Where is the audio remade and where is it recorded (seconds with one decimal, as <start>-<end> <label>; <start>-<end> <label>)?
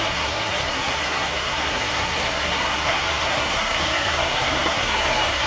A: 0.0-5.5 remade